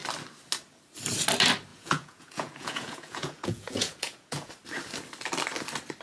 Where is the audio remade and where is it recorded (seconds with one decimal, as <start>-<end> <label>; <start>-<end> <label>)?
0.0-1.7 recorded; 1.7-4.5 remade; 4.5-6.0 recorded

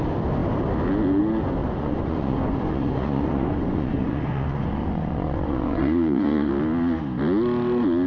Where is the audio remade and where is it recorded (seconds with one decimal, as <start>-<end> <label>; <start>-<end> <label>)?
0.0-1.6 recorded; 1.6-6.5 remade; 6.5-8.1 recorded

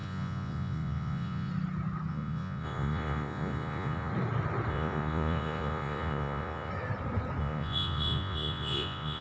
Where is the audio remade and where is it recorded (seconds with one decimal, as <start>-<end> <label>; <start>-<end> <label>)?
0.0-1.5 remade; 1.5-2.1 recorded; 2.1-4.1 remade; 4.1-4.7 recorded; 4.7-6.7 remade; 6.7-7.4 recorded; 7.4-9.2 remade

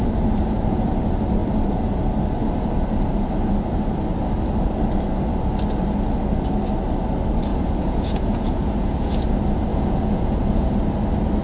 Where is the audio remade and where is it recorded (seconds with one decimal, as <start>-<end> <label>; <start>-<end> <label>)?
0.0-7.5 recorded; 7.5-9.1 remade; 9.1-9.7 recorded; 9.7-10.7 remade; 10.7-11.4 recorded

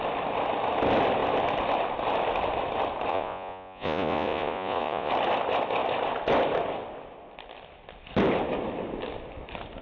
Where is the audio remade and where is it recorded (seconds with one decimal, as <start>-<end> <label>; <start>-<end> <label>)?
0.0-3.1 recorded; 3.1-5.1 remade; 5.1-9.8 recorded

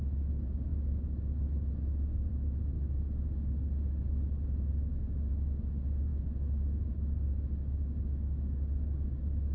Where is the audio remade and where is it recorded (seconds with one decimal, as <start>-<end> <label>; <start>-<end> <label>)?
0.0-9.5 recorded